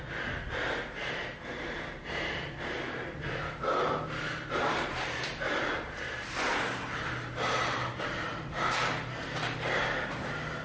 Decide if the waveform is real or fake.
fake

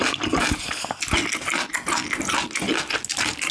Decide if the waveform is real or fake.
real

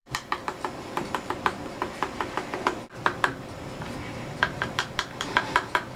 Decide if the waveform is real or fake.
fake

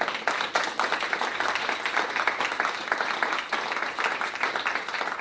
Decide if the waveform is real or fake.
real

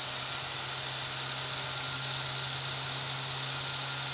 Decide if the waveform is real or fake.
real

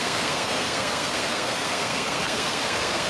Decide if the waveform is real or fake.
fake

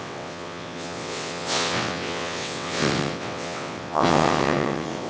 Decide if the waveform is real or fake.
fake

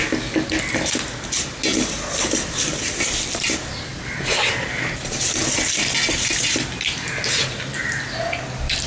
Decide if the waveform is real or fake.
real